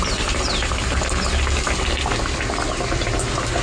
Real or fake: real